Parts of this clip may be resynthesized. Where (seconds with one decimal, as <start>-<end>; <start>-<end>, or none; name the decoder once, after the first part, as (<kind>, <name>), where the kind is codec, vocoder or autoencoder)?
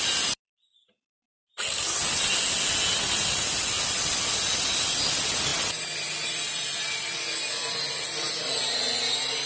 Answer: none